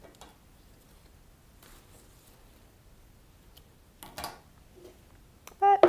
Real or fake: real